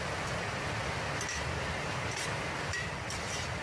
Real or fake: real